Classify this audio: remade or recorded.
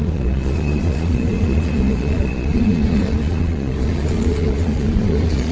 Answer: remade